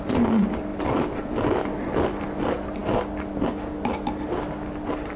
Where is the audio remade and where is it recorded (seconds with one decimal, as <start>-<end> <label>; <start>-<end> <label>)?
0.0-5.2 recorded